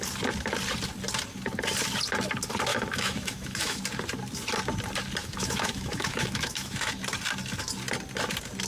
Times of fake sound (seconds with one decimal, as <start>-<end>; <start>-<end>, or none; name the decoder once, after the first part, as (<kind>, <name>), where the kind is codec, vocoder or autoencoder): 2.7-3.8 (autoencoder, DAC-VAE); 5.2-6.9